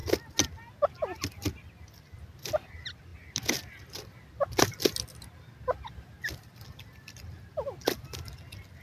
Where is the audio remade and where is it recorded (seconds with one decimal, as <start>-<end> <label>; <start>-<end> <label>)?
0.0-8.8 recorded